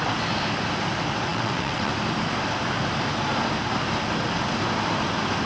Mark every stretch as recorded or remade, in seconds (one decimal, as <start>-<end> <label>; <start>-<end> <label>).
0.0-1.3 recorded; 1.3-1.9 remade; 1.9-5.5 recorded